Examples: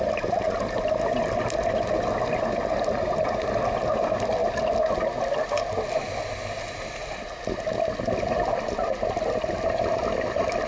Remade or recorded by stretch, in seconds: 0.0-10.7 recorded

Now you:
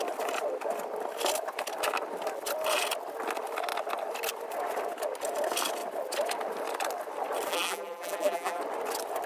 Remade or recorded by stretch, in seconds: 0.0-7.5 recorded; 7.5-8.6 remade; 8.6-9.3 recorded